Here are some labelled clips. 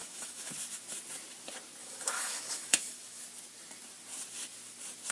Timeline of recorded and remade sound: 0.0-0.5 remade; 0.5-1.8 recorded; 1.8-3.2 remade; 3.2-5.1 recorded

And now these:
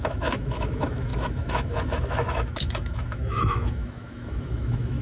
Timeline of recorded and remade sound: 0.0-5.0 remade

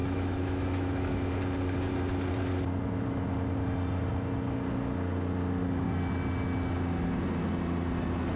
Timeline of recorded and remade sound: 0.0-1.4 remade; 1.4-8.4 recorded

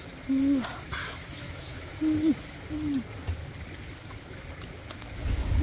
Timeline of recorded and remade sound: 0.0-1.0 recorded; 1.0-1.9 remade; 1.9-5.6 recorded

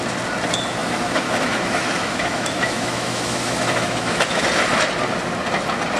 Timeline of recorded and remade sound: 0.0-0.8 recorded; 0.8-4.4 remade; 4.4-6.0 recorded